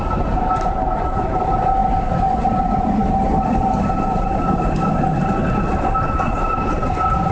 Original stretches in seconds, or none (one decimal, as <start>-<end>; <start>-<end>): 0.0-7.3